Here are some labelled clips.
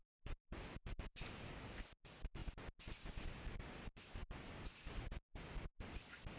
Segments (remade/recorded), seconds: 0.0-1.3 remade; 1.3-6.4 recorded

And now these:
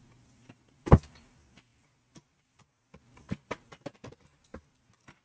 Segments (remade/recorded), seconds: 0.0-5.2 recorded

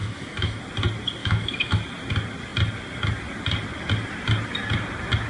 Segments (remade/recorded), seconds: 0.0-0.6 remade; 0.6-1.2 recorded; 1.2-1.8 remade; 1.8-5.3 recorded

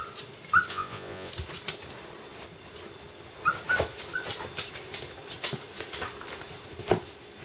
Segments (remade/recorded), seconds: 0.0-0.7 recorded; 0.7-1.3 remade; 1.3-7.4 recorded